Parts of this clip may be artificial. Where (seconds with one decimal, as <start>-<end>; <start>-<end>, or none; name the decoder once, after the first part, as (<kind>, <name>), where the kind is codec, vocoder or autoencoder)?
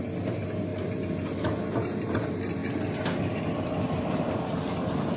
none